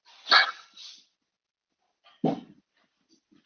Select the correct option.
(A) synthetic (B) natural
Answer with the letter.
B